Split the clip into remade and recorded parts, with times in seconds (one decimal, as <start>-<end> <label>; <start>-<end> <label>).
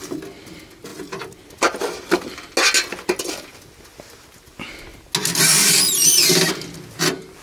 0.0-0.9 recorded; 0.9-2.5 remade; 2.5-7.4 recorded